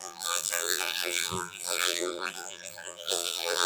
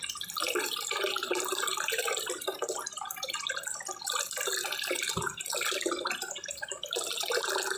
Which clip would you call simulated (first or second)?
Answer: first